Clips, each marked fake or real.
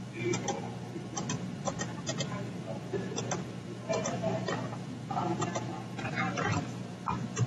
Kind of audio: real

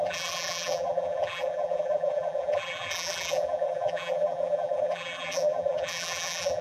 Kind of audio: fake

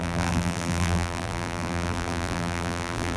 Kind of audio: fake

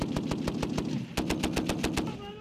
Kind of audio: real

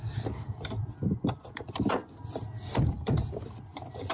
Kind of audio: fake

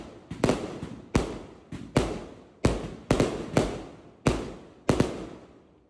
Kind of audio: real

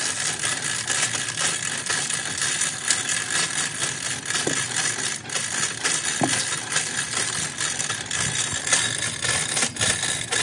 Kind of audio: real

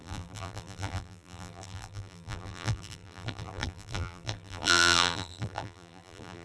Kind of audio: fake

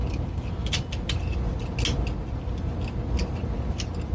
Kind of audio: real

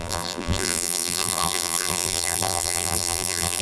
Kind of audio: fake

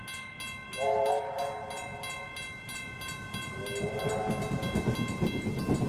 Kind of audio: real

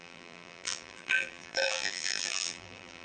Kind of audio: fake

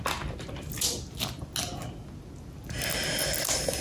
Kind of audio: real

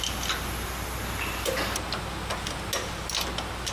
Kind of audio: real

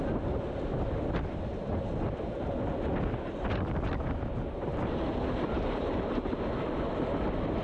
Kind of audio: real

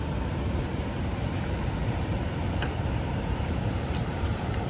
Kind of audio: fake